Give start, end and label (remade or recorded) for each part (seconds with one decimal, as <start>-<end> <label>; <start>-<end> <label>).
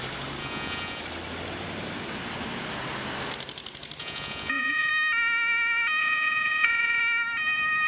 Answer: 0.0-0.4 recorded; 0.4-1.0 remade; 1.0-4.0 recorded; 4.0-4.9 remade; 4.9-6.0 recorded; 6.0-7.0 remade; 7.0-7.9 recorded